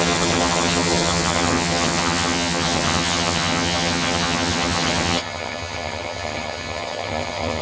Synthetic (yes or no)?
yes